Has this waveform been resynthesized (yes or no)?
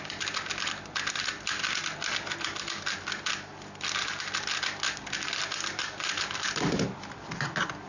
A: no